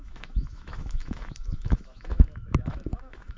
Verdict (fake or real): fake